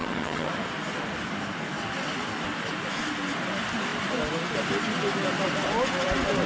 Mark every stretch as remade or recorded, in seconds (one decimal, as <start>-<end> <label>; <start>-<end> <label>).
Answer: 0.0-0.5 remade; 0.5-6.5 recorded